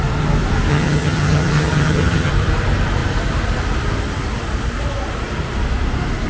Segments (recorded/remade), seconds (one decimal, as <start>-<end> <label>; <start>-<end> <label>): 0.0-0.7 recorded; 0.7-2.3 remade; 2.3-6.3 recorded